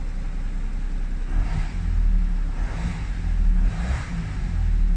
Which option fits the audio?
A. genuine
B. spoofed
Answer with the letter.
A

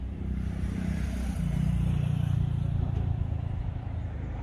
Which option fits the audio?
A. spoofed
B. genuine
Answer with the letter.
A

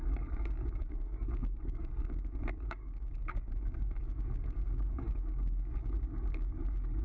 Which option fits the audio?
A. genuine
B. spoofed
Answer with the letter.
B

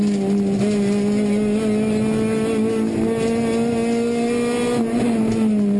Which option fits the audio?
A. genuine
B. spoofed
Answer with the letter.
A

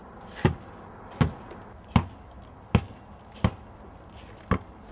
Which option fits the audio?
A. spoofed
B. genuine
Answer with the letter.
B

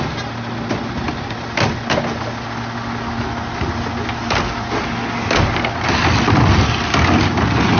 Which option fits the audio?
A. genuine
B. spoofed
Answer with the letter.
A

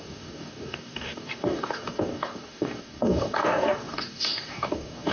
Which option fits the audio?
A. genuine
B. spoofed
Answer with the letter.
B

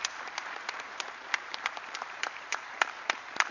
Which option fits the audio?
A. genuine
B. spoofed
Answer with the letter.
B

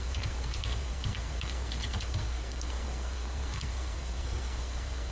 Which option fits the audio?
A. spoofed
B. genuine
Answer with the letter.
A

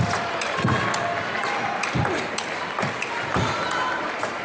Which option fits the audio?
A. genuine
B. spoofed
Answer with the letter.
A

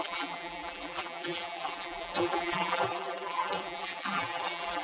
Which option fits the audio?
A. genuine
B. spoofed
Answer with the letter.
B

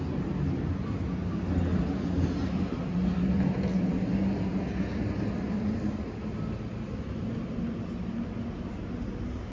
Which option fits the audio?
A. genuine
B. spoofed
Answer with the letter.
A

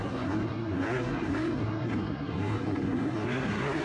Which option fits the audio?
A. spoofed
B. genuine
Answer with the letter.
A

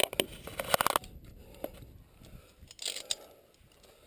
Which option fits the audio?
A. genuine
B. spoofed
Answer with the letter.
A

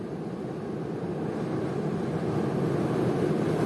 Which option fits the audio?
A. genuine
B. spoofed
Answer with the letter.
A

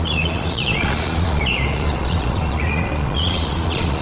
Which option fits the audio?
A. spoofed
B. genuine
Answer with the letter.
A